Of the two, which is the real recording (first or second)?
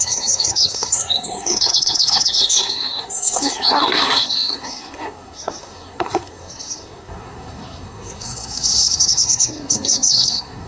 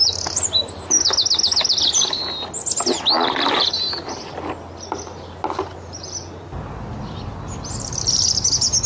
second